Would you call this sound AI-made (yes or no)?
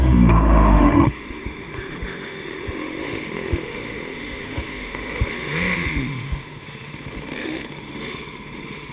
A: yes